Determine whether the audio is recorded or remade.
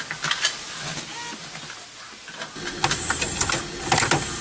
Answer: recorded